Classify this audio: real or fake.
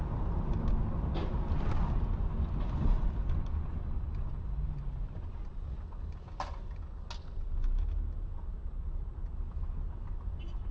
real